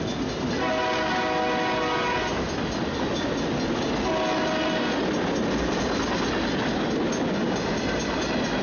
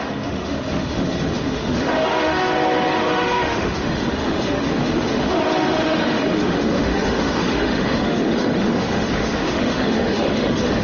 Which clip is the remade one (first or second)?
second